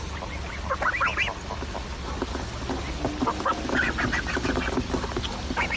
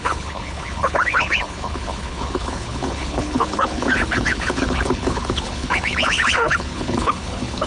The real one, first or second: first